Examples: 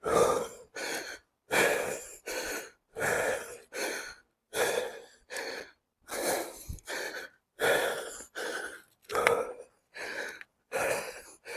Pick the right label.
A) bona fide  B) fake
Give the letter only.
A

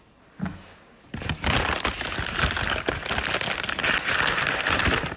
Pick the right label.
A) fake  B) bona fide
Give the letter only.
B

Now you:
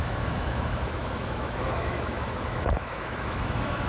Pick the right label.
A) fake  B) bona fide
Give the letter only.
A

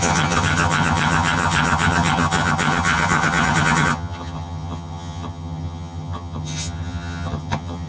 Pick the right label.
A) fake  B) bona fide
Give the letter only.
A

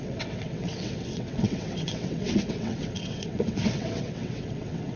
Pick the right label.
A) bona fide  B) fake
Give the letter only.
B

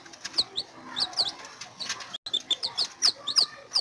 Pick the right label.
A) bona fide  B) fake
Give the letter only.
A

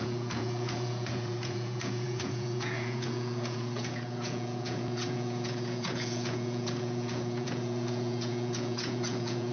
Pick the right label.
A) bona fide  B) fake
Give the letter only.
B